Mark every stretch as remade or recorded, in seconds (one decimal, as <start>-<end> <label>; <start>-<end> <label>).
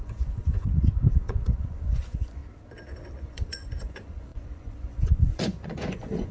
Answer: 0.0-2.4 remade; 2.4-3.2 recorded; 3.2-6.3 remade